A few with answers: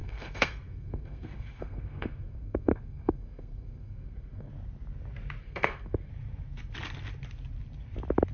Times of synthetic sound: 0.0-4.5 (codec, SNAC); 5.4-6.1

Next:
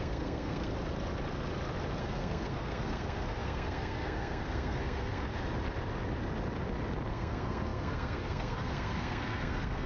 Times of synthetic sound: 0.0-0.7 (codec, SNAC); 2.0-5.3; 7.1-9.9

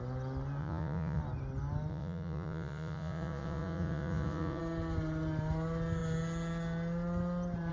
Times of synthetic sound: 0.6-1.2 (vocoder, Vocos); 1.9-4.6

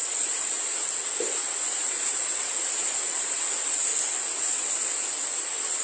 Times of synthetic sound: 0.0-3.5 (vocoder, BigVGAN v2)

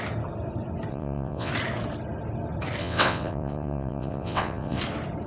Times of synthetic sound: 0.9-1.5 (vocoder, WaveNeXt); 2.8-4.8

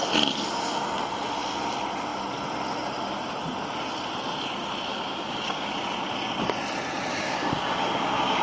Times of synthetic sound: 4.9-5.7 (codec, DAC); 7.1-8.4